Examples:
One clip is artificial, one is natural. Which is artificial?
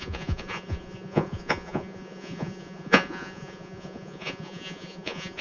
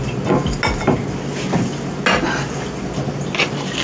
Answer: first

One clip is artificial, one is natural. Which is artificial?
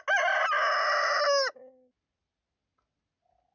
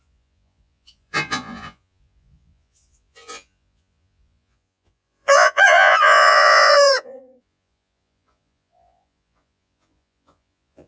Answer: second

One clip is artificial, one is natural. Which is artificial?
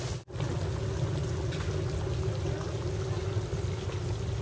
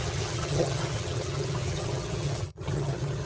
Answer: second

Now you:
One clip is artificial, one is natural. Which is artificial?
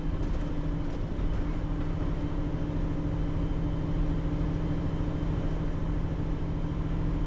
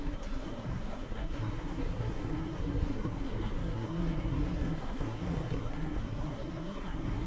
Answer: second